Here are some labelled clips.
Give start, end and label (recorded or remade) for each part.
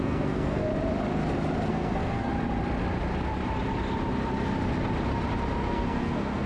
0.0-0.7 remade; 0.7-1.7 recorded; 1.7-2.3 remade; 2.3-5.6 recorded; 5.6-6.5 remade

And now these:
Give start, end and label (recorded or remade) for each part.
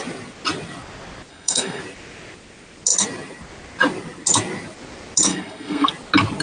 0.0-1.3 recorded; 1.3-1.8 remade; 1.8-5.3 recorded; 5.3-5.9 remade; 5.9-6.4 recorded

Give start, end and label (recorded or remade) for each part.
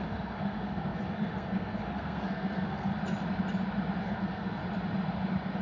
0.0-2.9 remade; 2.9-4.0 recorded; 4.0-4.6 remade; 4.6-5.6 recorded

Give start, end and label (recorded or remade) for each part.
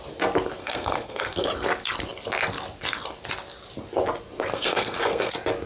0.0-0.6 recorded; 0.6-1.4 remade; 1.4-4.5 recorded; 4.5-5.3 remade; 5.3-5.7 recorded